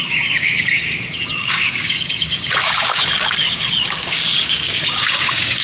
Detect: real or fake fake